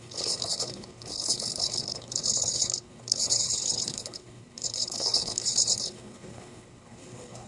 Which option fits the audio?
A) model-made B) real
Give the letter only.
A